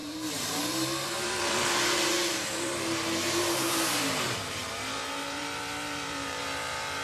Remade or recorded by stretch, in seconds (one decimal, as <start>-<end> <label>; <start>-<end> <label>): 0.0-7.0 remade